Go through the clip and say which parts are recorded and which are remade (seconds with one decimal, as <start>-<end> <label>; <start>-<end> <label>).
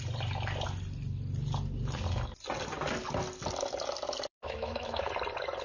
0.0-4.3 recorded; 4.3-5.1 remade; 5.1-5.6 recorded